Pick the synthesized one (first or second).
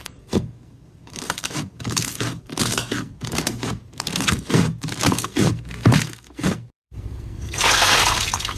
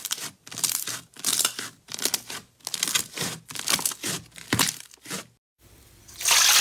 first